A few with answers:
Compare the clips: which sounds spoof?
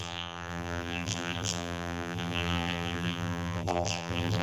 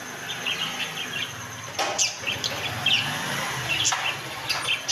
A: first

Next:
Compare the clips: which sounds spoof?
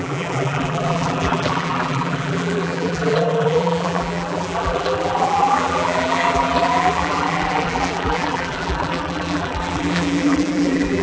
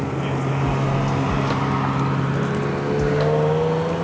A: first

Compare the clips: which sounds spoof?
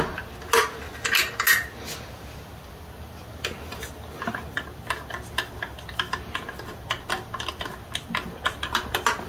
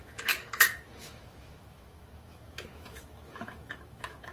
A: second